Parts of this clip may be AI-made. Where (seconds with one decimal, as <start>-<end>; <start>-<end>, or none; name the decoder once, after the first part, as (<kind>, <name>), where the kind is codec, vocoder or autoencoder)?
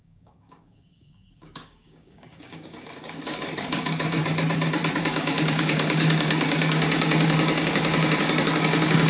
0.0-4.2 (codec, DAC); 5.0-9.1